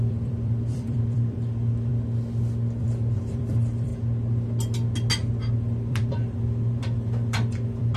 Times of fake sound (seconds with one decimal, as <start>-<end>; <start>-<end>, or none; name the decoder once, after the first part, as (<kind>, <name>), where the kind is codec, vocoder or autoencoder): 0.0-1.9 (vocoder, BigVGAN v2); 2.8-3.9; 5.6-8.0